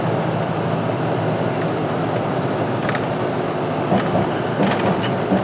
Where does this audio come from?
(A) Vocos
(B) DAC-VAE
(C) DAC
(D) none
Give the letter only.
D